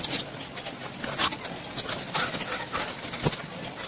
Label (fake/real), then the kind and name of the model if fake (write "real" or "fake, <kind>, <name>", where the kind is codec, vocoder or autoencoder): real